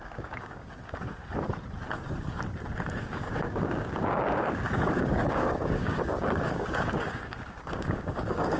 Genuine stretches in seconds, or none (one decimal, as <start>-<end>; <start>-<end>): 1.2-3.0